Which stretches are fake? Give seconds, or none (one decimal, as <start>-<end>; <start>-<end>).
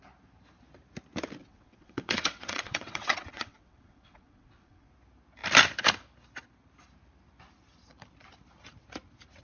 1.4-4.9